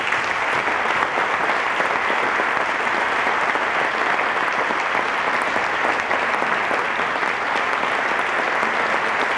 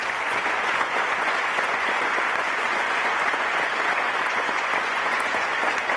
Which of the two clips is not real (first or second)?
second